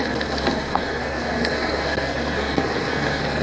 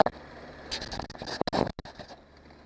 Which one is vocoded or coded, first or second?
first